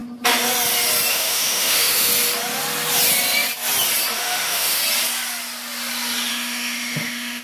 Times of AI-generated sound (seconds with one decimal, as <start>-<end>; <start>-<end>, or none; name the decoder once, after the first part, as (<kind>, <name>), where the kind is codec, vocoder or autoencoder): 1.1-2.1 (autoencoder, DAC-VAE); 4.2-4.8; 6.3-7.4